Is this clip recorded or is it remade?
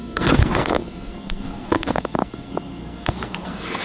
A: remade